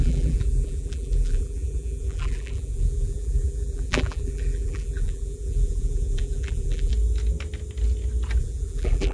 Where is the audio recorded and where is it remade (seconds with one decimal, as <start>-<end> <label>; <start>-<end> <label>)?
0.0-6.9 remade; 6.9-8.4 recorded; 8.4-9.1 remade